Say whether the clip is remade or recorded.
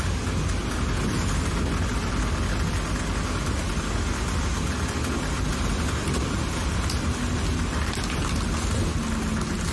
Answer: recorded